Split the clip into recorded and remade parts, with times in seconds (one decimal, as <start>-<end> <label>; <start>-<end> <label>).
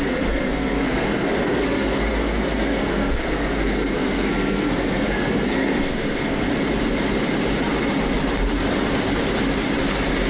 0.0-6.5 remade; 6.5-10.3 recorded